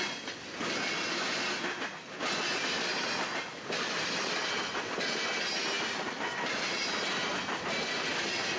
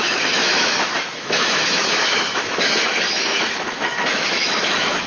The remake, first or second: second